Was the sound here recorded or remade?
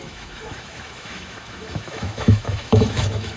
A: remade